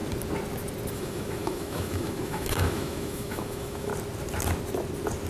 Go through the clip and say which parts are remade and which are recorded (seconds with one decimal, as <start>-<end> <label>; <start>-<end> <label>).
0.0-0.9 recorded; 0.9-3.9 remade; 3.9-5.3 recorded